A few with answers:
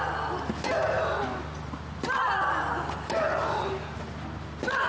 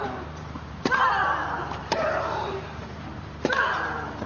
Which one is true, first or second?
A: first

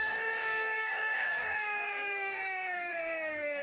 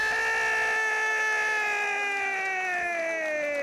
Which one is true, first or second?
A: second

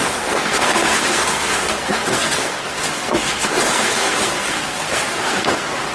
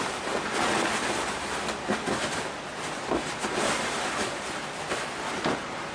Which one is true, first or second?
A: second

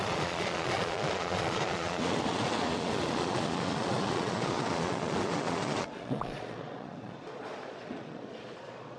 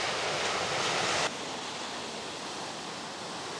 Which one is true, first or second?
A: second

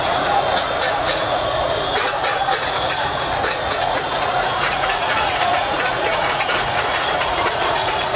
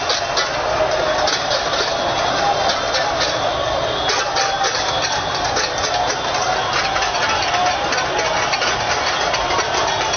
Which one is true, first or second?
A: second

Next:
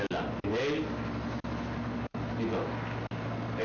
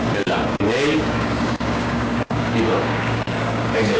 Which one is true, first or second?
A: first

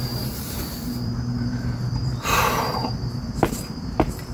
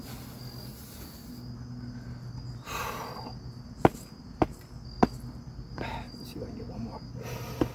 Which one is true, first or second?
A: second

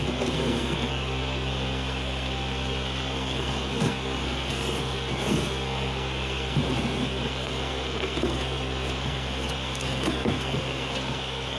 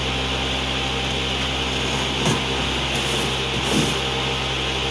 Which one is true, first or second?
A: second